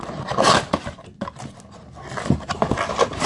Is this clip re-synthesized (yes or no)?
no